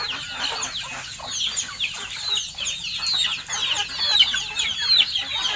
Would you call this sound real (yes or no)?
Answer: yes